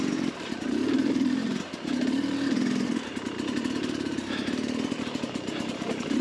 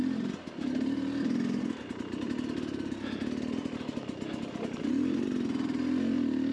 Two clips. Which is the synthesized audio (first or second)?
first